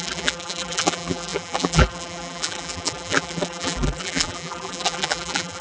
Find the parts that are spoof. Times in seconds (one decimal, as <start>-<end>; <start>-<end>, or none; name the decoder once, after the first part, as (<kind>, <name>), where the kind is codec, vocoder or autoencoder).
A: 0.0-5.6 (vocoder, BigVGAN v2)